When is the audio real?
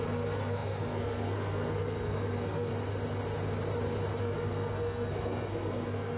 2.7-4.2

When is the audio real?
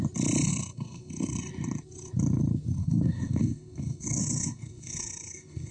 0.0-0.5; 1.1-2.8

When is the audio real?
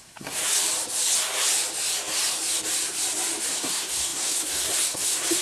0.4-3.4